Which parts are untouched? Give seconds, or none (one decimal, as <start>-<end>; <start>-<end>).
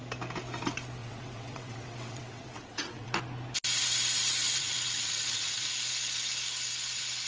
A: 0.0-1.0; 3.2-4.6; 5.7-7.3